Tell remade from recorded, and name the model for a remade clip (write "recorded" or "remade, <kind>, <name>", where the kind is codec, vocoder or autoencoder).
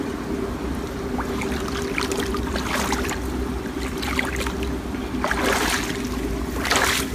recorded